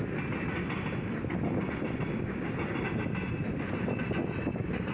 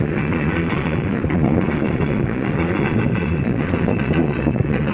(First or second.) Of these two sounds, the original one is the first